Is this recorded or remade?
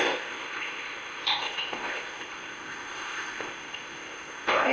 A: remade